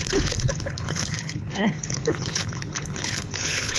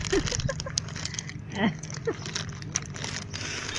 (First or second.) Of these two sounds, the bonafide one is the second